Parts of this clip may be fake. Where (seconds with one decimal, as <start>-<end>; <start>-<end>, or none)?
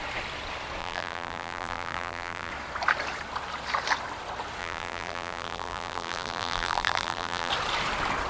0.8-2.5; 4.6-7.5